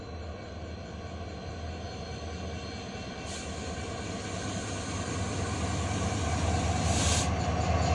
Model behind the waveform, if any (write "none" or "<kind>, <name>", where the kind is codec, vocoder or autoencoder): none